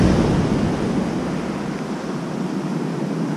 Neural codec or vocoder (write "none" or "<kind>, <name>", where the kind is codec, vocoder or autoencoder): none